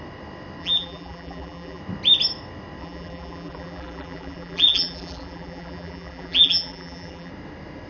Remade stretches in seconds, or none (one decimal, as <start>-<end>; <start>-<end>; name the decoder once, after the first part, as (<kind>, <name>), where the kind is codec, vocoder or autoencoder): 0.6-1.8 (vocoder, BigVGAN v2); 2.8-7.3